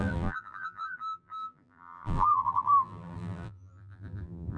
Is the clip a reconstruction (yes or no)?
yes